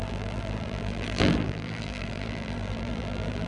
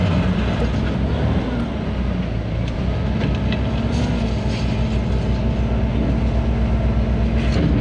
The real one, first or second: second